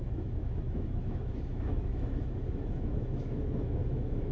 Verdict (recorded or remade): remade